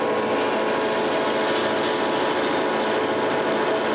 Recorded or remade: recorded